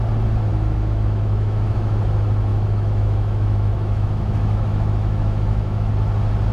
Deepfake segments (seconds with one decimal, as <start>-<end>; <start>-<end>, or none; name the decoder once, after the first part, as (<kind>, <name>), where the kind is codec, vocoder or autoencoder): 0.5-2.0 (autoencoder, DAC-VAE); 2.5-5.9